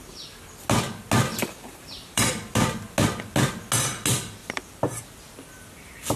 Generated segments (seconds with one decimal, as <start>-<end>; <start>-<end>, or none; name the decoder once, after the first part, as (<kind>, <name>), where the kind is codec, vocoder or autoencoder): 1.3-2.3 (vocoder, BigVGAN v2); 4.4-5.0